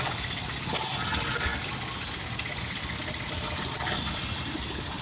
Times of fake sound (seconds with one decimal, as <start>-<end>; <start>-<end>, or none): none

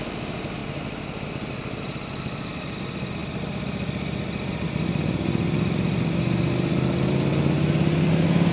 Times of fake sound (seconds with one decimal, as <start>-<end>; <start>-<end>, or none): none

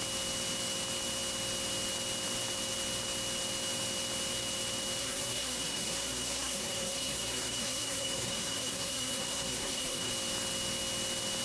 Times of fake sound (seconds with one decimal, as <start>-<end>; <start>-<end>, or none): 5.0-10.1

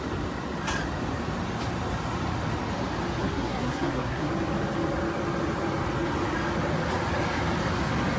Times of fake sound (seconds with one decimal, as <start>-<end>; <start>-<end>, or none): 3.2-4.3